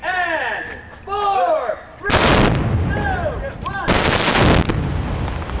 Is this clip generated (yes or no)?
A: no